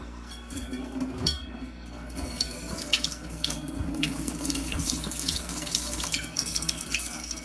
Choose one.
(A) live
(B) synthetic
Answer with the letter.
B